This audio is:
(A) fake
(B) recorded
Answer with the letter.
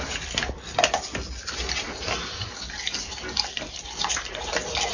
B